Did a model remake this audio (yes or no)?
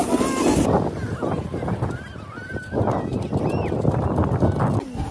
no